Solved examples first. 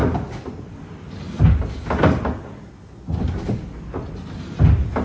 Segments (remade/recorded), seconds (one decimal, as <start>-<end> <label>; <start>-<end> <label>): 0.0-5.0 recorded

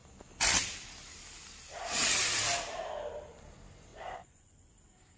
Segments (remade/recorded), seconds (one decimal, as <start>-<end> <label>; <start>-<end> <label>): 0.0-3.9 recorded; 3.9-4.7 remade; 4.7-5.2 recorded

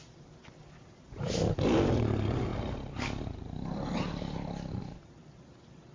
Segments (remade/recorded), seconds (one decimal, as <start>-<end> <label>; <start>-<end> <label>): 0.0-5.9 recorded

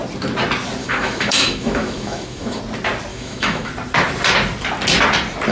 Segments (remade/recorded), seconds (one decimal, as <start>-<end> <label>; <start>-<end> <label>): 0.0-0.8 recorded; 0.8-2.6 remade; 2.6-3.1 recorded; 3.1-3.7 remade; 3.7-5.5 recorded

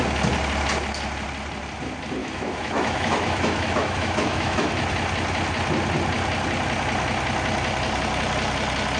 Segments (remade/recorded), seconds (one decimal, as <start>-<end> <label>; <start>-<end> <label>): 0.0-2.2 recorded; 2.2-4.6 remade; 4.6-9.0 recorded

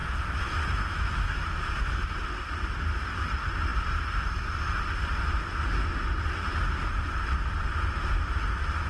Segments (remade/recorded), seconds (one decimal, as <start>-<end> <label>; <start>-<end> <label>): 0.0-1.6 remade; 1.6-8.9 recorded

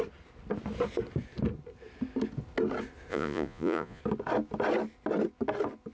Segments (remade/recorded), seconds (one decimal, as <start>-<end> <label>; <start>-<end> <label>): 0.0-3.1 recorded; 3.1-4.0 remade; 4.0-5.9 recorded

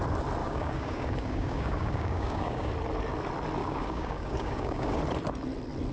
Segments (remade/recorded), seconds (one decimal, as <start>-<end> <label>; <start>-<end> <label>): 0.0-0.4 recorded; 0.4-2.7 remade; 2.7-3.6 recorded; 3.6-5.0 remade; 5.0-5.9 recorded